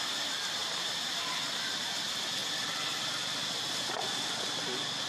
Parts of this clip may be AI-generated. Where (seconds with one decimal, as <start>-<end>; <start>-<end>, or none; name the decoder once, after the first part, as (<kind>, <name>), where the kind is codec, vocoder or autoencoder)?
0.0-5.1 (vocoder, BigVGAN v2)